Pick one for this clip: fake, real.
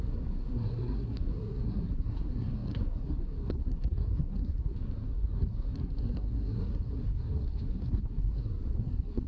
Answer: fake